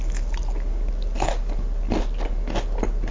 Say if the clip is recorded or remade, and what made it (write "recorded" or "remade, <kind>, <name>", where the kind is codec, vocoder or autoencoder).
recorded